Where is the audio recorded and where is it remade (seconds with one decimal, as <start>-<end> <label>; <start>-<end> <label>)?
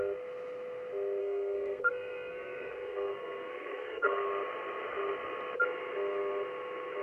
0.0-1.2 recorded; 1.2-4.3 remade; 4.3-7.0 recorded